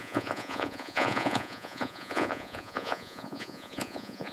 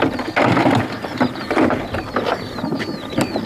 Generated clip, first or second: first